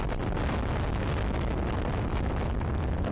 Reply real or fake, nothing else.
real